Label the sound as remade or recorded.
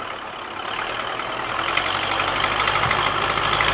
recorded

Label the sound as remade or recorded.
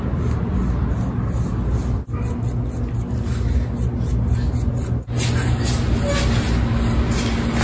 recorded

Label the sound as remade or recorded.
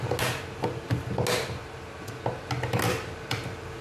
recorded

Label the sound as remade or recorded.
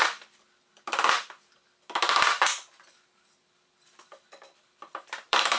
remade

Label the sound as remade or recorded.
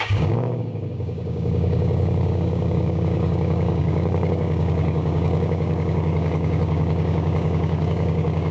remade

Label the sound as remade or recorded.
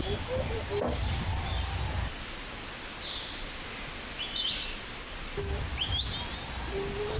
recorded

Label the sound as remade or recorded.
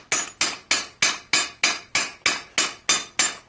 recorded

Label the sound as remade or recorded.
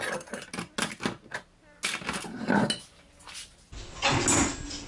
recorded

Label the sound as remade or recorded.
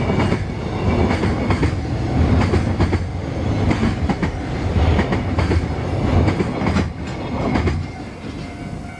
recorded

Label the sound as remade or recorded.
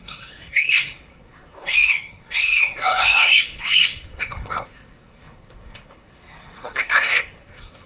remade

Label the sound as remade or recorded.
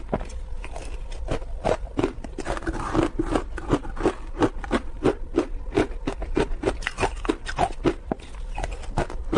recorded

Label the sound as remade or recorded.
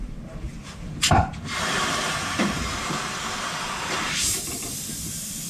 remade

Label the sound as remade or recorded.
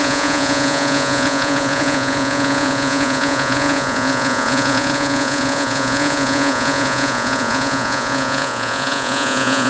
remade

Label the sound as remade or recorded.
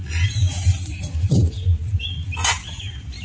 remade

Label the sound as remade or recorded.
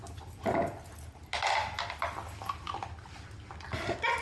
recorded